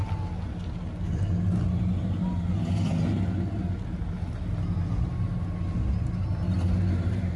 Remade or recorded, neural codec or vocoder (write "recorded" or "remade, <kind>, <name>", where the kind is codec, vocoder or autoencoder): recorded